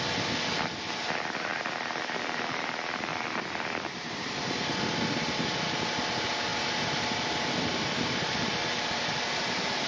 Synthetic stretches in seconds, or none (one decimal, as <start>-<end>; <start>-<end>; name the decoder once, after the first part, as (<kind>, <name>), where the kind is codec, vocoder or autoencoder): none